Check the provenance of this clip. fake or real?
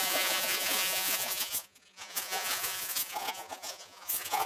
fake